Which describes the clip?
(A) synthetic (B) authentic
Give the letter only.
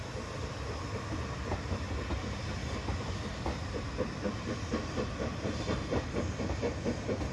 B